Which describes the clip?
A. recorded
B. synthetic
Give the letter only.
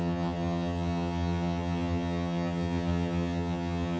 B